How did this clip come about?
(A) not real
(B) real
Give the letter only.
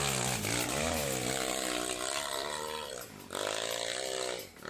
B